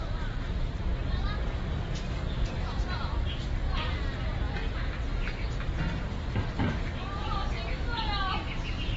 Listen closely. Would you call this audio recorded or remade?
recorded